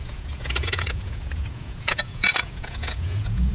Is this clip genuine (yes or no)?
no